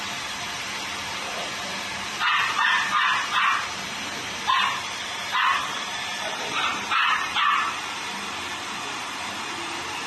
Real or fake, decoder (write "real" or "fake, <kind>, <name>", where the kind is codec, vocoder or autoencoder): fake, vocoder, BigVGAN v2